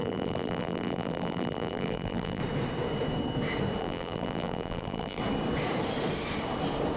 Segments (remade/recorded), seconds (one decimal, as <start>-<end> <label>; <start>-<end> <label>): 0.0-2.4 remade; 2.4-3.8 recorded; 3.8-5.2 remade; 5.2-7.0 recorded

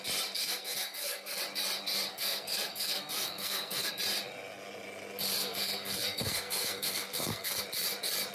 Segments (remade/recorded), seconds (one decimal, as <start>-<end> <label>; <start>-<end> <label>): 0.0-0.4 recorded; 0.4-1.4 remade; 1.4-2.1 recorded; 2.1-3.9 remade; 3.9-5.4 recorded; 5.4-7.6 remade; 7.6-8.3 recorded